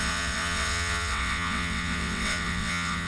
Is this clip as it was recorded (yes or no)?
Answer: no